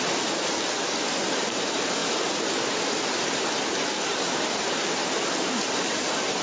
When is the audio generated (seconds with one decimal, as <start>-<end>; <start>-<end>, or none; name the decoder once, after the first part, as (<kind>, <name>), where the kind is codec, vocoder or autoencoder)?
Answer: 0.0-2.0 (vocoder, BigVGAN v2); 2.8-6.4